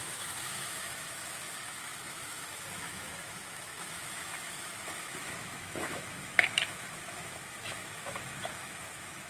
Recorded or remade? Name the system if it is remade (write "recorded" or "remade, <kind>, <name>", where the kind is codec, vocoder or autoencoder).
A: remade, autoencoder, DAC-VAE